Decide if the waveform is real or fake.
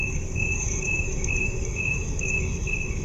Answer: fake